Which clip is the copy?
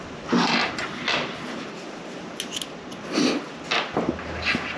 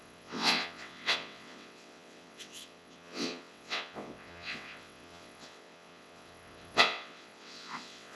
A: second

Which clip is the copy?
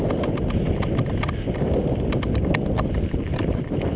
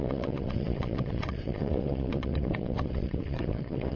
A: second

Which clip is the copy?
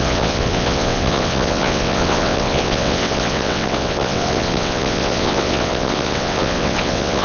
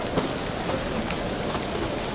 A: first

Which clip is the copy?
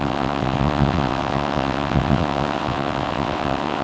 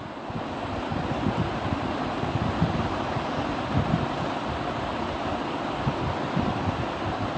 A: first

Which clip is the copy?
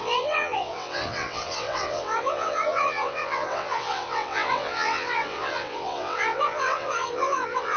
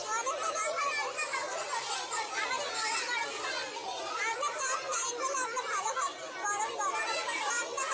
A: first